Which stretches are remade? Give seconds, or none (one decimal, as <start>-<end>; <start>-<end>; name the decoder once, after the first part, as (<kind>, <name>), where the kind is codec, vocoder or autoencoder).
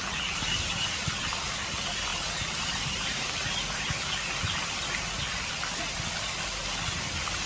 none